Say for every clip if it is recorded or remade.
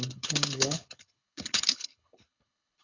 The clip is remade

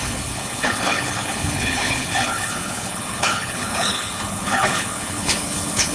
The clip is remade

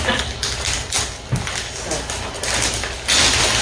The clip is recorded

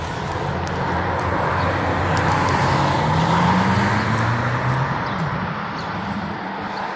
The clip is recorded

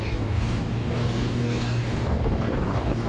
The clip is remade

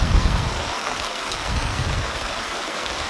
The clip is remade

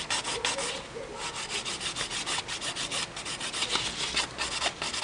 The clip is recorded